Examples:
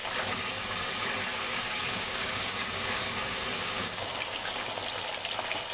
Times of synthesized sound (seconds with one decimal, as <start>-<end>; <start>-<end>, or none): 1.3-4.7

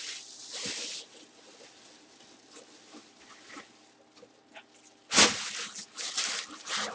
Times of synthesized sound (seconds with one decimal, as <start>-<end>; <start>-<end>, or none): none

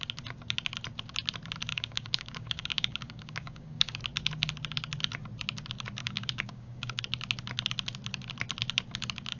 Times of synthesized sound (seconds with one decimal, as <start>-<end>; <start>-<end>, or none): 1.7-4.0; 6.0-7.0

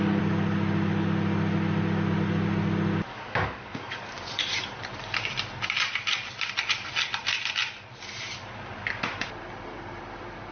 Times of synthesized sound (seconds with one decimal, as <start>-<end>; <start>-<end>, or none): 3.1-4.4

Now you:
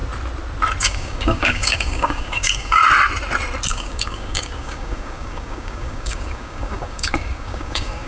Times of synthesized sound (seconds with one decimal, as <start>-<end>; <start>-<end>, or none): 0.8-2.8; 3.7-8.1

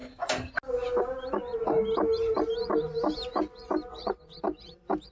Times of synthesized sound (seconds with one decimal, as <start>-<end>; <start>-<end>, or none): 0.0-0.5

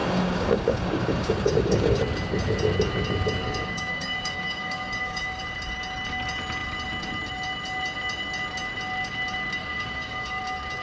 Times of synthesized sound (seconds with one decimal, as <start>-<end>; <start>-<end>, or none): 0.0-2.0; 3.4-5.4; 9.6-10.4

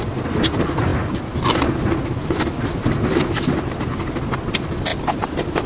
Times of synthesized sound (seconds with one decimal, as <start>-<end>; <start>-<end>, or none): none